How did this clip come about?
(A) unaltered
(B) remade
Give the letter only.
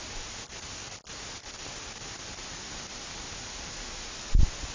A